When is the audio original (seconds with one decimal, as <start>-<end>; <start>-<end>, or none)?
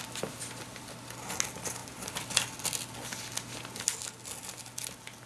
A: 0.0-5.3